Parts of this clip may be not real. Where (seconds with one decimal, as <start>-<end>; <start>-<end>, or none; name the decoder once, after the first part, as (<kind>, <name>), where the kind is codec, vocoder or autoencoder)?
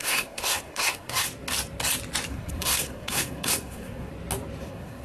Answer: 0.0-1.3 (codec, SNAC); 2.3-4.1; 4.6-5.0